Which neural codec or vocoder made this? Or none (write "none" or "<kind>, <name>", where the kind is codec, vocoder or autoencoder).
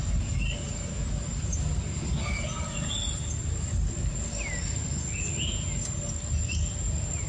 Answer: none